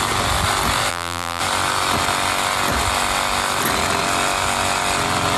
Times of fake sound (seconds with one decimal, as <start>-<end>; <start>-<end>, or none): 0.9-1.4